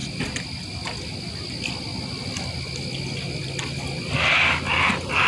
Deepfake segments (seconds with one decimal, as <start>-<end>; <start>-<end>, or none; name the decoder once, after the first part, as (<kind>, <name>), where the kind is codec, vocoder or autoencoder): none

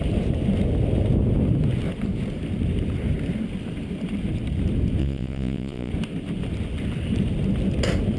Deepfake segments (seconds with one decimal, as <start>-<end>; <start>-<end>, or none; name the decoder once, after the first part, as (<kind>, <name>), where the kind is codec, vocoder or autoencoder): 5.0-5.9 (vocoder, Vocos)

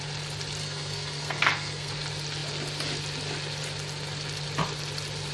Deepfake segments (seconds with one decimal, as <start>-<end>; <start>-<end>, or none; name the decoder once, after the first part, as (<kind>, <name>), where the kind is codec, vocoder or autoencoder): 0.6-1.9 (codec, SNAC)